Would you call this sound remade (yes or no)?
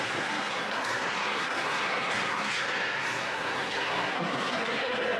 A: yes